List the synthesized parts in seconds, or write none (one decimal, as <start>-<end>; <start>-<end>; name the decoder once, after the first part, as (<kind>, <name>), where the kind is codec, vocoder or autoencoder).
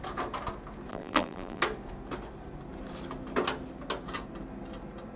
0.9-1.6 (vocoder, BigVGAN v2)